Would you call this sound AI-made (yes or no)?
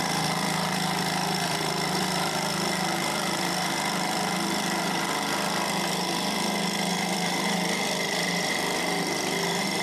yes